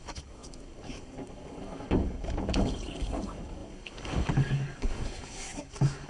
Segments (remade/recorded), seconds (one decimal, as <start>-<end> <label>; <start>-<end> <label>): 0.0-6.1 remade